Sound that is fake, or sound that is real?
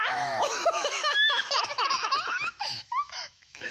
fake